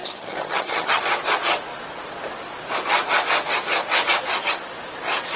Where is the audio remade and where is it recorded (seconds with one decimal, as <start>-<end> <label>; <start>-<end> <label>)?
0.0-1.0 remade; 1.0-5.4 recorded